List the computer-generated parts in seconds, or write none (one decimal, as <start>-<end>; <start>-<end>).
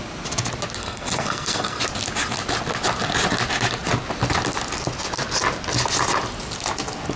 0.8-1.8